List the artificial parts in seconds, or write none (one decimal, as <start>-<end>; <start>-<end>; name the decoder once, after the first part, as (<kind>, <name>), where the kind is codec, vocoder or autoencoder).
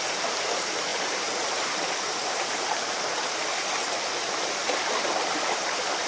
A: none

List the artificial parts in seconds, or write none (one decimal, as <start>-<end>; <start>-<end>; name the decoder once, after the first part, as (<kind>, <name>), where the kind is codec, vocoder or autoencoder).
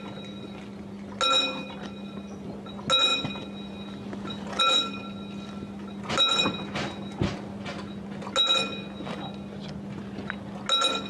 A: none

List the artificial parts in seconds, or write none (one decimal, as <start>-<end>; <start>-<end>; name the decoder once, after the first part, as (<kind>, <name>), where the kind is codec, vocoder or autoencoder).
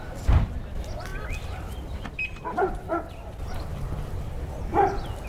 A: 1.1-3.1 (vocoder, BigVGAN v2)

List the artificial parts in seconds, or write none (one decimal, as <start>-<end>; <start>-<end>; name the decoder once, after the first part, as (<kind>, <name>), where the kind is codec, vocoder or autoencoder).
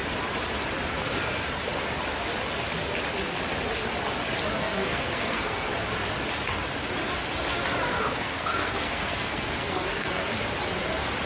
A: 4.6-5.7 (codec, SNAC); 7.9-10.3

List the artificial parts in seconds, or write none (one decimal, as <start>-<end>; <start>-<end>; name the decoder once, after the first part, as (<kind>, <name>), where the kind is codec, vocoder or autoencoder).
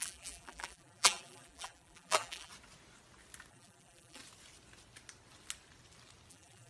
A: 0.0-2.5 (vocoder, BigVGAN v2); 3.5-4.2; 6.3-6.7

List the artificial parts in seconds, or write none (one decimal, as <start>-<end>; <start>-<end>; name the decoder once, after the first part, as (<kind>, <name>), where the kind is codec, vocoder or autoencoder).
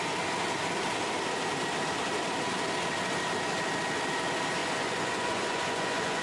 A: 4.6-6.2 (vocoder, Vocos)